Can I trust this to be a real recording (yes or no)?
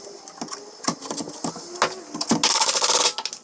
yes